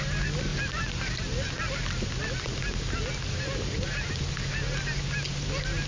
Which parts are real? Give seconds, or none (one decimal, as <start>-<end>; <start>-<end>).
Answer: 0.0-5.9